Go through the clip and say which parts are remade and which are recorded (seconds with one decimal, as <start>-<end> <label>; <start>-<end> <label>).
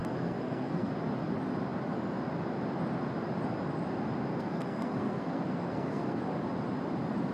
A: 0.0-0.9 remade; 0.9-4.3 recorded; 4.3-6.2 remade; 6.2-7.3 recorded